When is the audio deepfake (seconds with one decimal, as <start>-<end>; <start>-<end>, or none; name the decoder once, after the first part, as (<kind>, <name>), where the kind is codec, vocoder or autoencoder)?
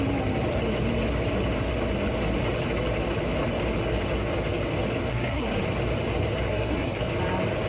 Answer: 5.1-5.6 (codec, SNAC); 6.5-7.0